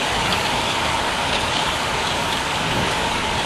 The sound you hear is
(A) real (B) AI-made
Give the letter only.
B